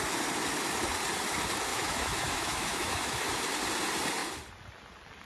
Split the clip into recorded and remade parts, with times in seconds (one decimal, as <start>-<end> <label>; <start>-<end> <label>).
0.0-1.7 recorded; 1.7-3.4 remade; 3.4-5.3 recorded